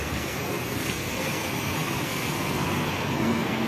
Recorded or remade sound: remade